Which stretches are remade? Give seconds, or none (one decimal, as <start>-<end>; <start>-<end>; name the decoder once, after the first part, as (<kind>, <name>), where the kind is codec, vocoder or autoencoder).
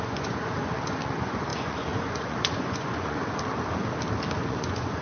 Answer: 0.0-3.2 (vocoder, Vocos); 4.4-5.0